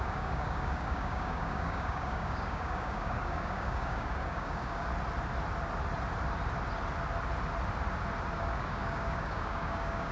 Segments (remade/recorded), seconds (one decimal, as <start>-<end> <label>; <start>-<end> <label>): 0.0-4.9 remade; 4.9-8.3 recorded; 8.3-10.1 remade